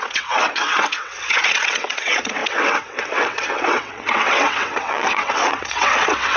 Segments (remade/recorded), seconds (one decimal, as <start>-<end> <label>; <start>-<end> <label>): 0.0-6.4 remade